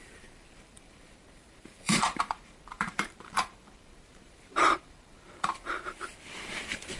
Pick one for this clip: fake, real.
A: fake